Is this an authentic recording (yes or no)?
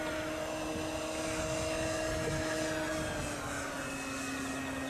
yes